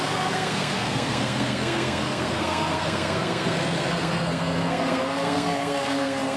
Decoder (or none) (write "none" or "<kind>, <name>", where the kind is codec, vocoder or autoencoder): codec, SNAC